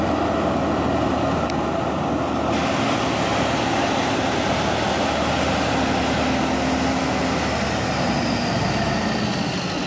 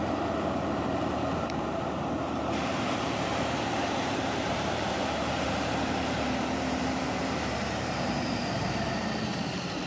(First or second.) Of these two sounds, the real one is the first